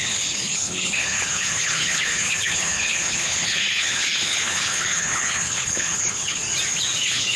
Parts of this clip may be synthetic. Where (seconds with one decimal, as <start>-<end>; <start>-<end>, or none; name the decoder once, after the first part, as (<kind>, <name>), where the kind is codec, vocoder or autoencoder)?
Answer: 0.0-6.4 (codec, HILCodec); 7.0-7.4